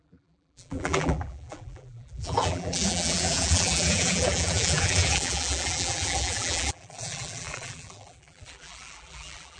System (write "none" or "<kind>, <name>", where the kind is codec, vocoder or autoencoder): vocoder, BigVGAN v2